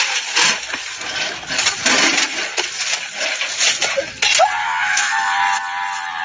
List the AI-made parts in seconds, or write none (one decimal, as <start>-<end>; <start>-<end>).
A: 4.6-5.4